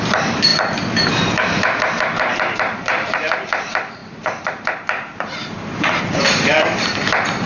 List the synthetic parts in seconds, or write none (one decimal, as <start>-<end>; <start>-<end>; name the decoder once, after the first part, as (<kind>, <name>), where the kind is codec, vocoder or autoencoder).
0.0-7.5 (vocoder, BigVGAN v2)